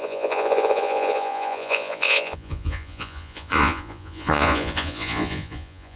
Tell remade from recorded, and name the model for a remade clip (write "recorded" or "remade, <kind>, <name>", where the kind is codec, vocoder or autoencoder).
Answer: remade, vocoder, Vocos